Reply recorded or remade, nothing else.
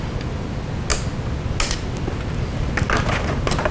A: recorded